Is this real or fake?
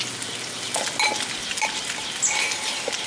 real